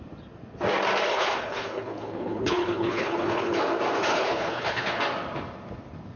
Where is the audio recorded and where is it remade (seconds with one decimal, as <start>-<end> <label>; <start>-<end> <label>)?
0.0-1.1 recorded; 1.1-3.6 remade; 3.6-4.1 recorded; 4.1-5.0 remade; 5.0-6.2 recorded